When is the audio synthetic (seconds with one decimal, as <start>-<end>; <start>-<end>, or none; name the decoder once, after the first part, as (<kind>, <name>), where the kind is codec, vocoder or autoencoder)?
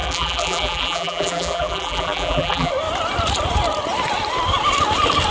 0.0-2.7 (vocoder, BigVGAN v2)